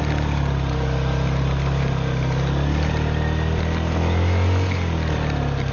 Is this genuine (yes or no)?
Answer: yes